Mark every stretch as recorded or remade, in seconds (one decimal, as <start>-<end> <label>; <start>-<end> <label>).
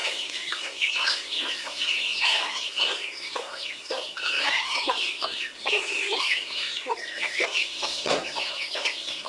0.0-9.3 remade